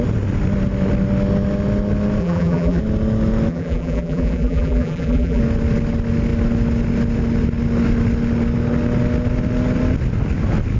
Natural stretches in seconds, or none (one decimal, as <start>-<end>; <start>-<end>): 0.0-2.2; 2.8-3.5; 5.4-10.8